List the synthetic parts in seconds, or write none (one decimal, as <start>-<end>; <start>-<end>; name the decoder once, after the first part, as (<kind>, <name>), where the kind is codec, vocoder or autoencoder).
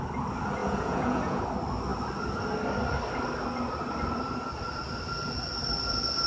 0.6-1.4 (vocoder, Vocos)